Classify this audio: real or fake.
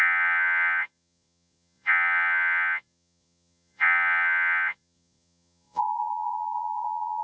fake